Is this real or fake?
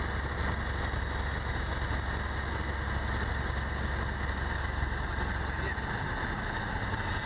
real